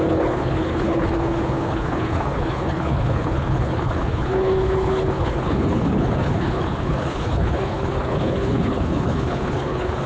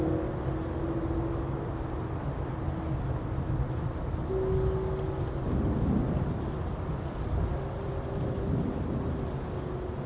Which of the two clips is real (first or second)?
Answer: second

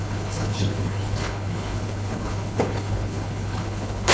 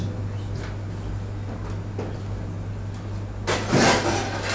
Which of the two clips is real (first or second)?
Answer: second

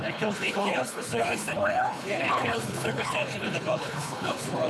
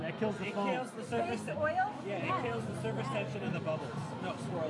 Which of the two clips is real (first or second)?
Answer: second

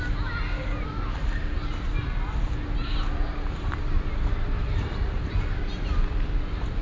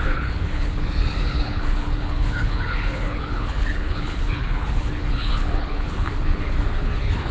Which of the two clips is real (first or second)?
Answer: first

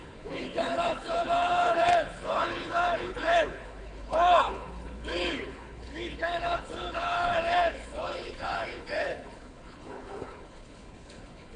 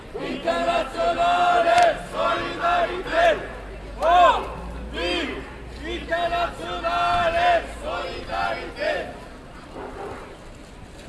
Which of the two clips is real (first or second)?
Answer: second